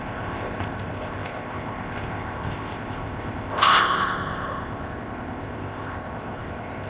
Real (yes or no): no